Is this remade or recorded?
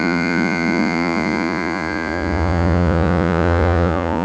remade